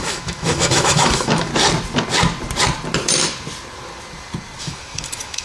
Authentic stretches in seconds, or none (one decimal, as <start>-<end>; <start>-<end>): 1.5-4.6